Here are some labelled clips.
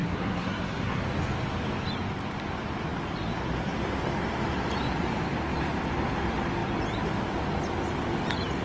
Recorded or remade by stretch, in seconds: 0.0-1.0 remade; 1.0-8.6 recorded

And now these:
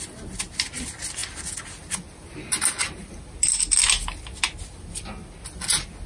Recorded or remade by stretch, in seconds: 0.0-6.1 recorded

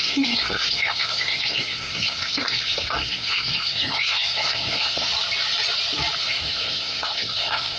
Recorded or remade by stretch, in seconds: 0.0-5.1 remade; 5.1-6.2 recorded; 6.2-7.8 remade